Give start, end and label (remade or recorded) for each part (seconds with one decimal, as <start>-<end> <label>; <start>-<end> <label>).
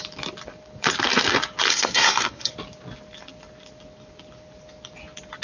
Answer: 0.0-1.7 recorded; 1.7-2.5 remade; 2.5-5.4 recorded